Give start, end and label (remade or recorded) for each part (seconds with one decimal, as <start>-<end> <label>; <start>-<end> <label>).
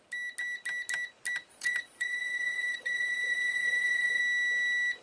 0.0-1.5 recorded; 1.5-4.2 remade; 4.2-5.0 recorded